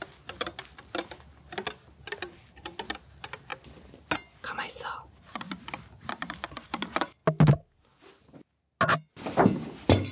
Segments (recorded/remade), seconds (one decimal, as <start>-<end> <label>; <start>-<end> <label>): 0.0-10.1 recorded